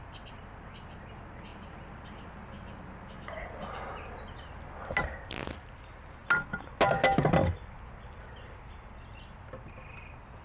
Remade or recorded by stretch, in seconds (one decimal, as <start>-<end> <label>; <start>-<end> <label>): 0.0-10.4 recorded